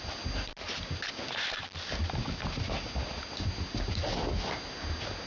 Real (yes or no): yes